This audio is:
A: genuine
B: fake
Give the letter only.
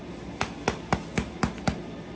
A